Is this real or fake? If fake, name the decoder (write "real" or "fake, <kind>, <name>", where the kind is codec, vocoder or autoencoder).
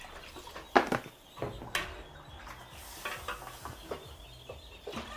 real